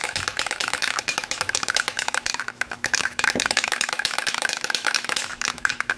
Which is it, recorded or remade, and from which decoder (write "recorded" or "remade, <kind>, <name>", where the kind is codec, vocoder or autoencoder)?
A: remade, autoencoder, DAC-VAE